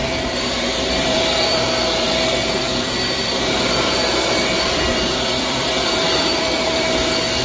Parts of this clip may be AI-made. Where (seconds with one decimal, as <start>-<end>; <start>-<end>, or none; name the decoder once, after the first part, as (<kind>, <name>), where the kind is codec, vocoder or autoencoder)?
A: 0.0-7.4 (vocoder, BigVGAN v2)